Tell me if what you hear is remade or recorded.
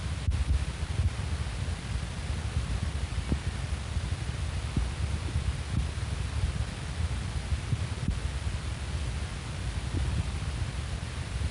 recorded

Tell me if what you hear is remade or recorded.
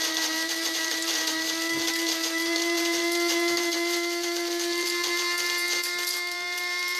remade